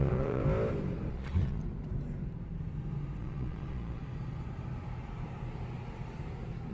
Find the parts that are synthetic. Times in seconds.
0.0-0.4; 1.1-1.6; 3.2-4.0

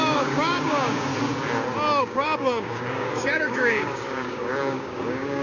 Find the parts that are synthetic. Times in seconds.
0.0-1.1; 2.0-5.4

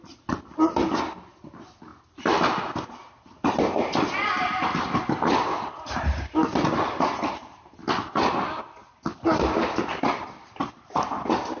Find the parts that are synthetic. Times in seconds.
none

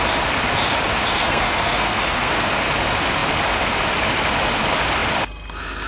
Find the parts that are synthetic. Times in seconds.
1.1-2.5

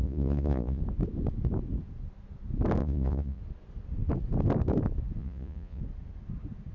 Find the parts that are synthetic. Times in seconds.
0.0-0.8; 2.8-3.4; 5.2-5.8

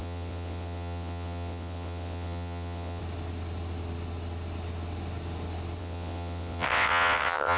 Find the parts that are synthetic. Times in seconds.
0.0-3.0; 5.8-7.6